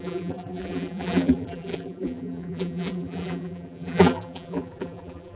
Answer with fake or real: fake